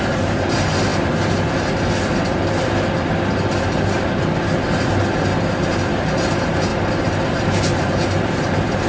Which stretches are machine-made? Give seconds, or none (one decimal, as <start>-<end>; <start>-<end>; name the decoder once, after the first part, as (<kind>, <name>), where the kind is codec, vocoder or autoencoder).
0.0-0.9 (vocoder, BigVGAN v2); 5.5-6.7; 7.4-8.9